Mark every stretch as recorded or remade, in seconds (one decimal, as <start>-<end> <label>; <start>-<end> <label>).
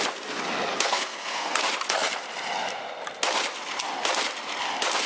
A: 0.0-0.7 recorded; 0.7-1.6 remade; 1.6-5.1 recorded